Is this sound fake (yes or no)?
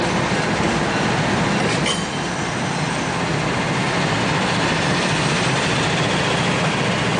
no